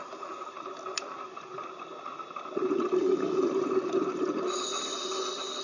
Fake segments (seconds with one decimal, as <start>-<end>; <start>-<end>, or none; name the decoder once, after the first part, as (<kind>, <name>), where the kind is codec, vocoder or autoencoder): 3.0-3.5 (codec, DAC)